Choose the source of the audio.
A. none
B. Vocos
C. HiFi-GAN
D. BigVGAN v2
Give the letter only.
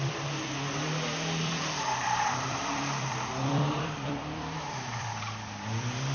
D